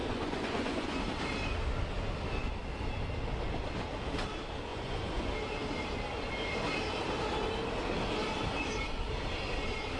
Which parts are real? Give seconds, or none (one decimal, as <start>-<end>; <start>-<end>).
1.0-4.7; 5.3-10.0